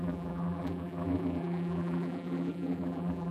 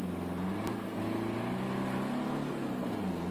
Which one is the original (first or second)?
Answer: second